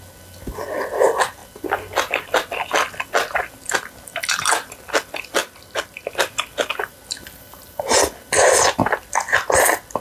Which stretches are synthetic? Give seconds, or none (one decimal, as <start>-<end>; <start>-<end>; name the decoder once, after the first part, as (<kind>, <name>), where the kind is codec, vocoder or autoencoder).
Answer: none